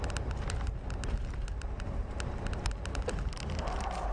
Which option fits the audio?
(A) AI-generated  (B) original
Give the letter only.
B